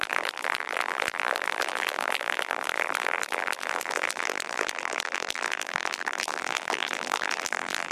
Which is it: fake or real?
fake